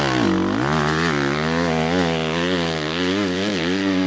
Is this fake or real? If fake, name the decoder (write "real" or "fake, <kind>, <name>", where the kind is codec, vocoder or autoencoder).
real